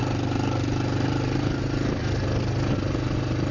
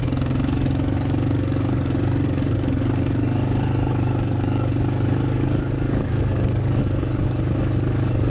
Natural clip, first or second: first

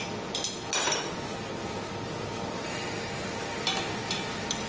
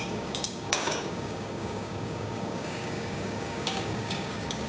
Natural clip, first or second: first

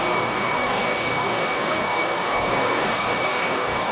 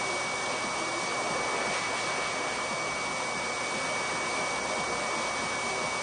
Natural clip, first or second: second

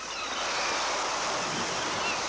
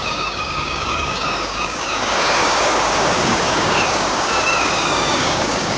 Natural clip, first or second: first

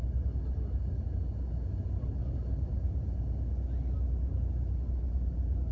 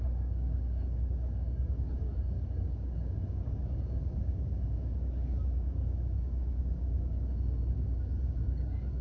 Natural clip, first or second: first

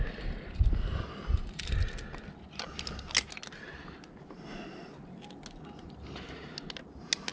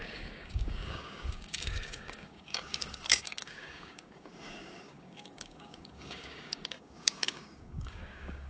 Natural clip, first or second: first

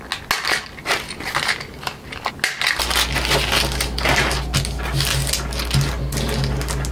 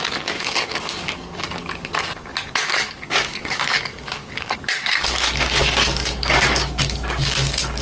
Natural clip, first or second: first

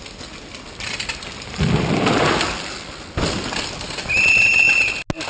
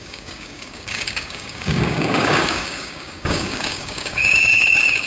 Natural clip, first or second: first